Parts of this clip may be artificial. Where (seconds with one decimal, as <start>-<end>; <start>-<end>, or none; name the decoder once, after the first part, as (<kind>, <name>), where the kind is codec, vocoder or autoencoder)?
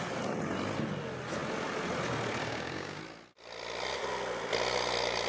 2.4-3.0 (codec, DAC)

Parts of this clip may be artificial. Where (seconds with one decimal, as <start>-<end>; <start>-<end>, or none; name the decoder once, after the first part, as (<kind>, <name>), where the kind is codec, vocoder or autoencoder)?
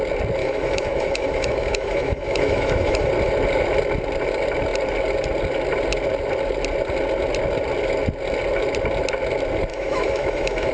0.4-3.1 (autoencoder, DAC-VAE); 9.7-10.7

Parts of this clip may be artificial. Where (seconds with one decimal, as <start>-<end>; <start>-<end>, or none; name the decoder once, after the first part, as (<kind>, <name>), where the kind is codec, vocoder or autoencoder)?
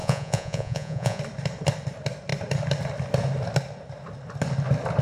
0.0-1.2 (vocoder, Vocos)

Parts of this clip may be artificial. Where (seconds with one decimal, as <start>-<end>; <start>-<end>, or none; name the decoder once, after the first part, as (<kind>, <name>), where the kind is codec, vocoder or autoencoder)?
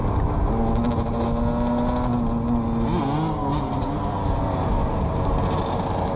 0.0-0.5 (vocoder, BigVGAN v2); 3.5-5.1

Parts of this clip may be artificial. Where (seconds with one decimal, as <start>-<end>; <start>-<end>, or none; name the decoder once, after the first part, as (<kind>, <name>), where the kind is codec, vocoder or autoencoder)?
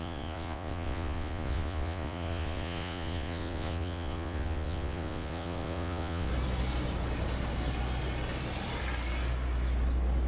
0.0-6.3 (vocoder, Vocos)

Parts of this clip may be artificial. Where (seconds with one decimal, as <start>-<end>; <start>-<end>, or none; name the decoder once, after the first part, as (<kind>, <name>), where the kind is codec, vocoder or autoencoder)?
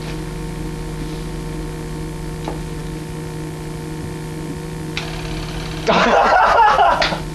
none